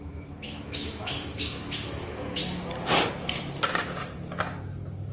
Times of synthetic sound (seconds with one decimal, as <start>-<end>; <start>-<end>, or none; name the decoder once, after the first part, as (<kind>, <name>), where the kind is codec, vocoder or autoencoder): 0.0-2.4 (autoencoder, DAC-VAE)